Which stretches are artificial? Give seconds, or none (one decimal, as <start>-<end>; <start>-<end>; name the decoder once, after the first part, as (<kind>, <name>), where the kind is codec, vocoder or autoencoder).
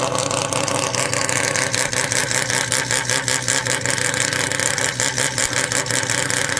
none